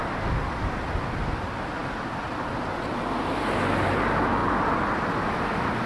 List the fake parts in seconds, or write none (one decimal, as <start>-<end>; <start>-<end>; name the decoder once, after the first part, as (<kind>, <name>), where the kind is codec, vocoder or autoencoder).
none